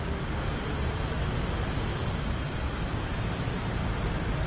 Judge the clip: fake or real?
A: real